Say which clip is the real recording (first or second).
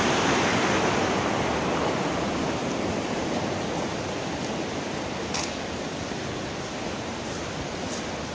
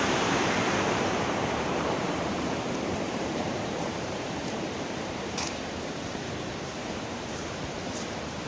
first